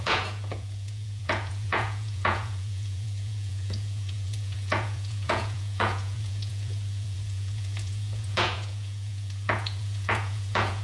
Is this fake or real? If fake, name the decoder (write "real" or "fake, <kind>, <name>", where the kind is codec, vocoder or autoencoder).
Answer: fake, vocoder, Vocos